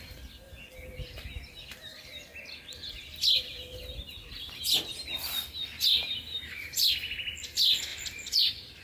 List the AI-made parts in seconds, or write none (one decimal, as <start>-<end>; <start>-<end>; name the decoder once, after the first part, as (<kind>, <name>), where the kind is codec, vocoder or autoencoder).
6.0-6.9 (vocoder, BigVGAN v2); 7.9-8.8